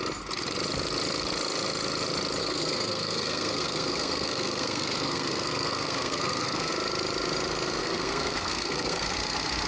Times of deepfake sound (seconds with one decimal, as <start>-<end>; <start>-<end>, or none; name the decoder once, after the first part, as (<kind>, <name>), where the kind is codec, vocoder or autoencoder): 2.4-6.7 (codec, SNAC); 7.8-9.1